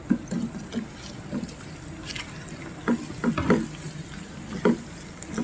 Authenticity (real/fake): real